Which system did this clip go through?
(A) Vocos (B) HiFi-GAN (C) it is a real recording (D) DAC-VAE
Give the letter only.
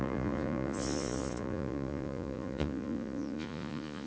A